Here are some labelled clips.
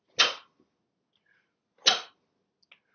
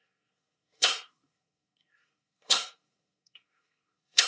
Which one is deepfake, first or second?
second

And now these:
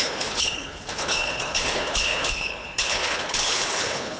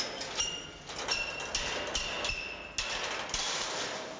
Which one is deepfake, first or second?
first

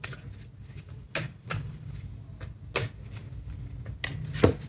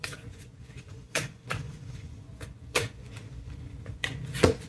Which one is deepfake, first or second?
second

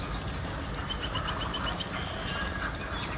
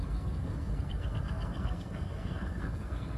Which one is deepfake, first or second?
second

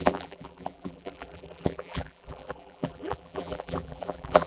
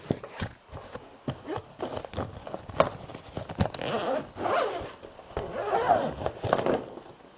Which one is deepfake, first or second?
first